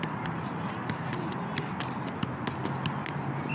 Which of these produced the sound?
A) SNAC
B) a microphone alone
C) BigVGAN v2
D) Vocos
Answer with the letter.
B